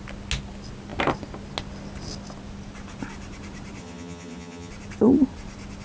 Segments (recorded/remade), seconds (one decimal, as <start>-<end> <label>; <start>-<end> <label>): 0.0-3.8 recorded; 3.8-4.7 remade; 4.7-5.8 recorded